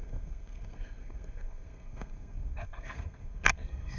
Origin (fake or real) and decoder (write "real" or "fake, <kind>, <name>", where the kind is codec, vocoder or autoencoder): fake, codec, SNAC